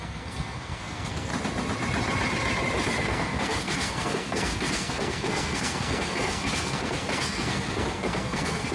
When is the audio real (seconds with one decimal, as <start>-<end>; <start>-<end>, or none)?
1.3-3.0